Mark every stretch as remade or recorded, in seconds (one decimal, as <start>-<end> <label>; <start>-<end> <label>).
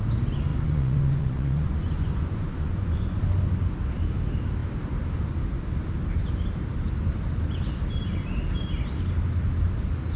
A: 0.0-0.5 recorded; 0.5-3.2 remade; 3.2-10.2 recorded